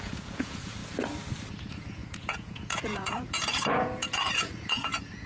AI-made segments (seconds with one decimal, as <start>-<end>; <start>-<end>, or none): 0.0-0.8; 1.5-5.3